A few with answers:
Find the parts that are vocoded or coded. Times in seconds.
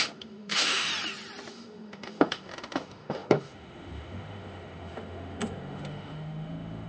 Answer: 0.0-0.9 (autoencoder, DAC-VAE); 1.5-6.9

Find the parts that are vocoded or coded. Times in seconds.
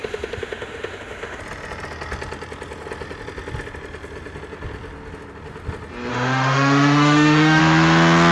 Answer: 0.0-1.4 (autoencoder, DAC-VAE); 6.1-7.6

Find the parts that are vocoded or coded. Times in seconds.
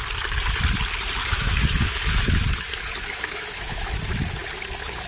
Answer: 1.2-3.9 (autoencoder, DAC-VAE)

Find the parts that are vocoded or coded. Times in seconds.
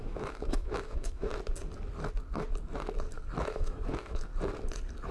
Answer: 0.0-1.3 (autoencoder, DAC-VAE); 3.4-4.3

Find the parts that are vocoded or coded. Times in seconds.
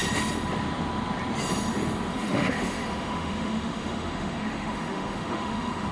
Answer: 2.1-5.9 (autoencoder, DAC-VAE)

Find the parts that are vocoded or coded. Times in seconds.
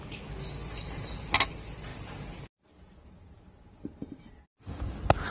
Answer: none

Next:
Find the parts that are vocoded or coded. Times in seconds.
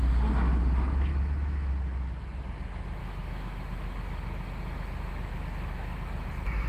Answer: 1.1-1.7 (autoencoder, DAC-VAE); 3.0-6.3